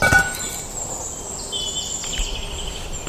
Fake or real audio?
real